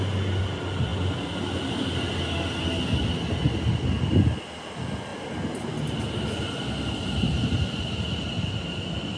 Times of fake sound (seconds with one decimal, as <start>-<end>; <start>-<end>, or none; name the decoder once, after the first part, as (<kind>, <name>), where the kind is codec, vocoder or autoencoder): none